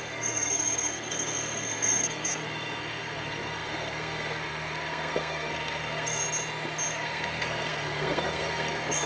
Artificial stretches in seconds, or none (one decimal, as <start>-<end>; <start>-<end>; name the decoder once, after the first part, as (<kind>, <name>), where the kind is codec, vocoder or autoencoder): 0.0-6.2 (codec, SNAC); 6.9-9.1